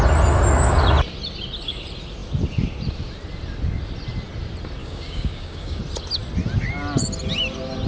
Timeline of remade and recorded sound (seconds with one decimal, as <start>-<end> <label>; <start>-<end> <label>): 0.0-4.8 recorded; 4.8-5.8 remade; 5.8-7.9 recorded